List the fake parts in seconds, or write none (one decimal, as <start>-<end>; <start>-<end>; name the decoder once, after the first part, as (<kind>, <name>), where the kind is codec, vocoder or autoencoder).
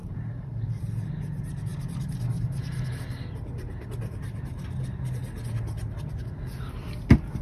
0.0-0.8 (vocoder, BigVGAN v2)